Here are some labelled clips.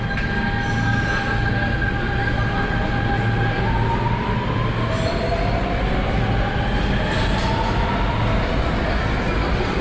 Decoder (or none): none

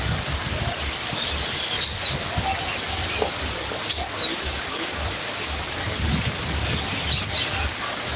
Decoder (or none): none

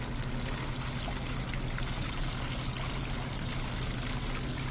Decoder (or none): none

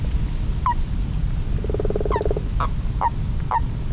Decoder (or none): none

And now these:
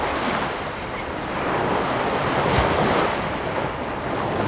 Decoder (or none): none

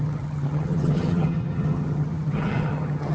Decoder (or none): vocoder, HiFi-GAN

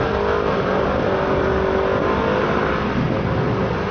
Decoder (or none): none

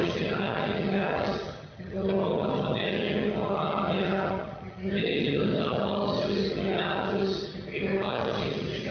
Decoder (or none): vocoder, HiFi-GAN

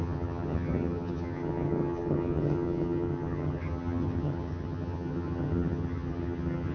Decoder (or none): vocoder, HiFi-GAN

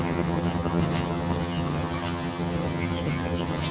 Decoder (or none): vocoder, HiFi-GAN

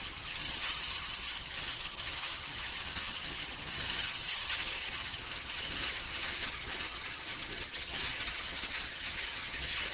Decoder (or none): vocoder, HiFi-GAN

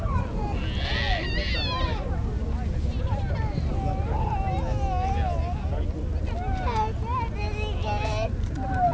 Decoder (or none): none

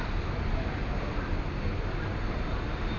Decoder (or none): none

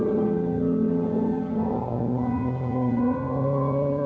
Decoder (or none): vocoder, HiFi-GAN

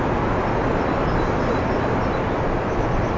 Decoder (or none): none